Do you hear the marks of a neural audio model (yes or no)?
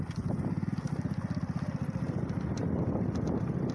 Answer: no